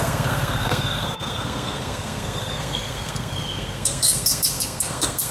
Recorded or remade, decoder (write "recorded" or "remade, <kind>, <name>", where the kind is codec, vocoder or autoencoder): remade, codec, SNAC